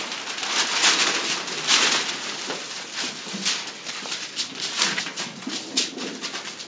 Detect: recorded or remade recorded